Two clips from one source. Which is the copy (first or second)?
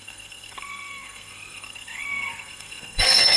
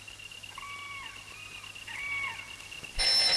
first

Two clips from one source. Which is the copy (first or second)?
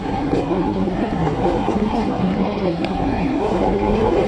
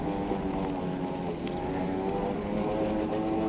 first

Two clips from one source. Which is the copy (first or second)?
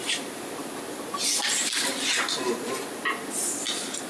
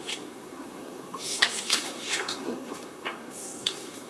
second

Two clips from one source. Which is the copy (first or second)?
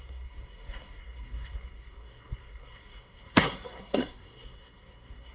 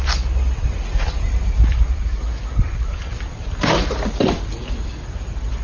first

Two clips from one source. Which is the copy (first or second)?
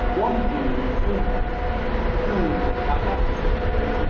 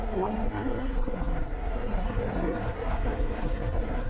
second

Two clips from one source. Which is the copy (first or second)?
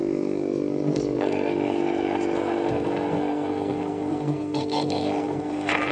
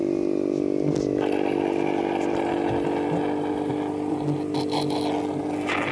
first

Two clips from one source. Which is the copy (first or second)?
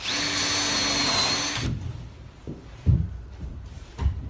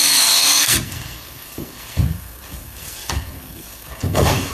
second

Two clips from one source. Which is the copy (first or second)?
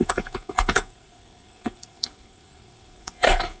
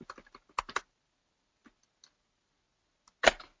first